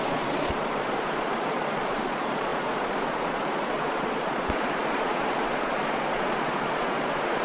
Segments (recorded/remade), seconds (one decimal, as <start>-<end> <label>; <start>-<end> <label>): 0.0-7.4 remade